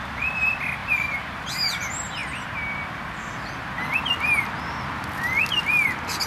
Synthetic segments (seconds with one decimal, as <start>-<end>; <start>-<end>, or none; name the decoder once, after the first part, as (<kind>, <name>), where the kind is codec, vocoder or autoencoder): 0.8-1.5 (vocoder, BigVGAN v2)

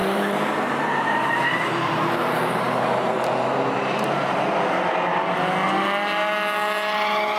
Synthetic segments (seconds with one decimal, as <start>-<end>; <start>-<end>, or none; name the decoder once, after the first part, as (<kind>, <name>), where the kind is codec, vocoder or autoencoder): 0.0-4.4 (vocoder, BigVGAN v2)